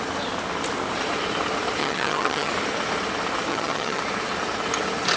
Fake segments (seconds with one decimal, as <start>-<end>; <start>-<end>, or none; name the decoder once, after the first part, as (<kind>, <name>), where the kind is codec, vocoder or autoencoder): 1.8-2.5 (vocoder, HiFi-GAN); 3.5-4.0